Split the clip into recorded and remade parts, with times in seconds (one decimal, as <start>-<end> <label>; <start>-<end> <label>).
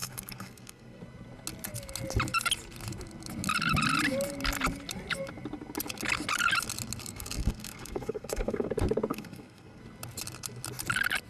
0.0-1.0 remade; 1.0-7.0 recorded; 7.0-8.7 remade; 8.7-9.1 recorded; 9.1-9.8 remade; 9.8-11.3 recorded